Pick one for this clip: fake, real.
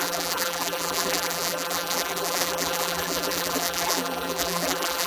fake